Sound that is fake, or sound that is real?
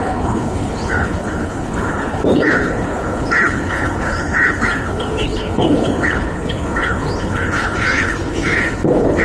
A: fake